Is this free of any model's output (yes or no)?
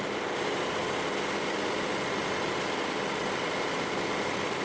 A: yes